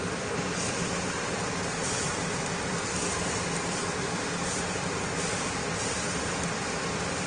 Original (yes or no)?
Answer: no